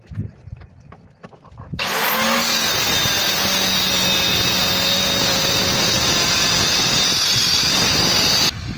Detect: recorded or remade recorded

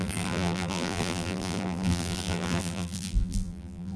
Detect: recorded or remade remade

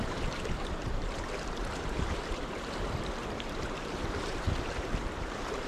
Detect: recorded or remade remade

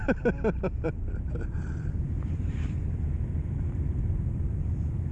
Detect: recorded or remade remade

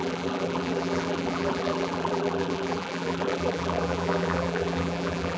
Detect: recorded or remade remade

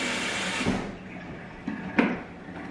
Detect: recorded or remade recorded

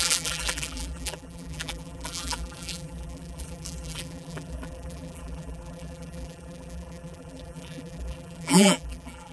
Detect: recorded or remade remade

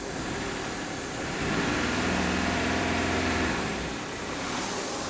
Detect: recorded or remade remade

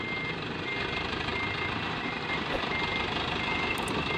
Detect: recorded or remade recorded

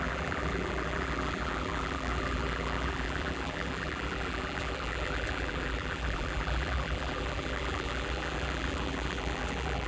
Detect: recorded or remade remade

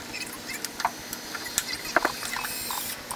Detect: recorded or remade recorded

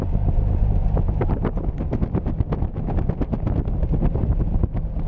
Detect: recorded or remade recorded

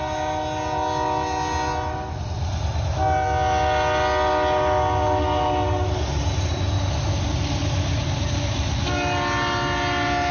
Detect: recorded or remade recorded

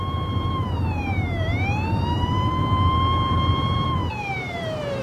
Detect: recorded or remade remade